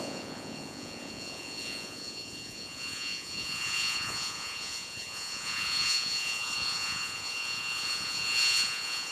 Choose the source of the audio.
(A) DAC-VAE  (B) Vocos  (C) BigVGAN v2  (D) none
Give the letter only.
B